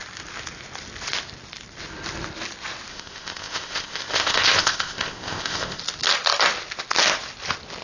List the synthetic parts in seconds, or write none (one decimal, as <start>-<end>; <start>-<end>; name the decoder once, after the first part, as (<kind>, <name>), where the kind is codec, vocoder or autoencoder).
2.9-5.8 (codec, ZipCodec)